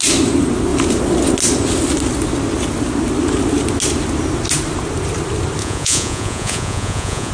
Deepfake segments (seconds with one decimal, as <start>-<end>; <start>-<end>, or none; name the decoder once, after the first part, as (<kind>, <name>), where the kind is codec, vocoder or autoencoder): 5.6-7.3 (vocoder, Vocos)